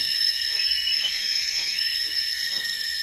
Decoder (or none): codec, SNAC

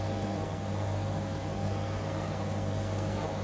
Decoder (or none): codec, SNAC